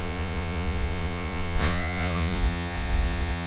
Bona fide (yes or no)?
no